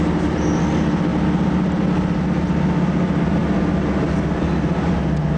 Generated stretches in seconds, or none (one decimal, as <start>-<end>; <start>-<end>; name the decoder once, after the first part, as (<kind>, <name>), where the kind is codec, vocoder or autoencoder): none